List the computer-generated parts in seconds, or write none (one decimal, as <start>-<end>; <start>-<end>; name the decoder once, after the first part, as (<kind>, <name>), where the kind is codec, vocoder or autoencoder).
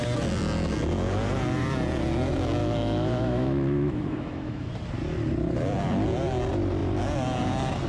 2.6-4.7 (autoencoder, DAC-VAE)